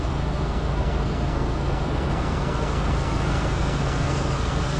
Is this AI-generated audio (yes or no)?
yes